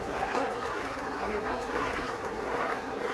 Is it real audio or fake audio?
fake